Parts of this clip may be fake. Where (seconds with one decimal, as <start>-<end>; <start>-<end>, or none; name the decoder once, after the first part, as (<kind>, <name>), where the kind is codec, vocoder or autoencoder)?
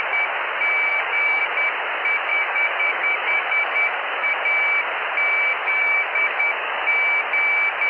0.9-1.4 (codec, DAC); 2.3-4.3; 5.6-6.9